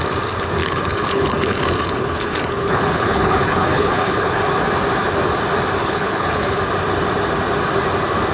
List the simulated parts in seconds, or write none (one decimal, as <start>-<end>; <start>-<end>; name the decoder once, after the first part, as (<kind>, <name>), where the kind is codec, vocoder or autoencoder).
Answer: 0.6-4.4 (codec, HILCodec); 5.8-6.6